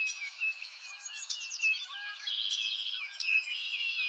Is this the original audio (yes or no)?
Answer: no